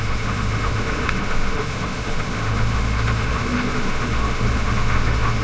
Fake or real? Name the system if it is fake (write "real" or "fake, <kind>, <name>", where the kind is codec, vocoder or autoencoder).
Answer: fake, autoencoder, DAC-VAE